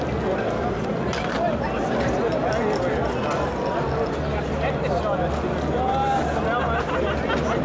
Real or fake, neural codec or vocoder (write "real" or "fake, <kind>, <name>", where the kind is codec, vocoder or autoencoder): real